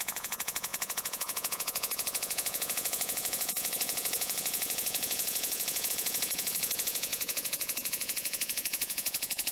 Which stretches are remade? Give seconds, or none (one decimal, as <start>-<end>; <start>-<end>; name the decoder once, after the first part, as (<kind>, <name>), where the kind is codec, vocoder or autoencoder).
0.0-9.5 (vocoder, Vocos)